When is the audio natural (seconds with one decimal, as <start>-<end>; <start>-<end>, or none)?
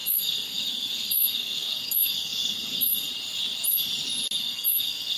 3.1-4.4